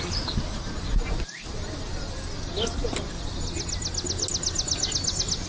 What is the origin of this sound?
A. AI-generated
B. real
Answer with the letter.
B